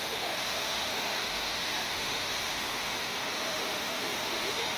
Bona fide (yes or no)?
no